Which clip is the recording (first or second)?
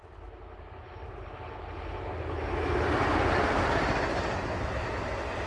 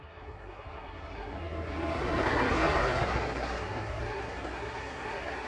first